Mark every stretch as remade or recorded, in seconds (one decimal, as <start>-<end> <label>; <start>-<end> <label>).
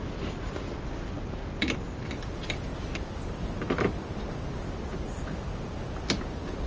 0.0-6.7 recorded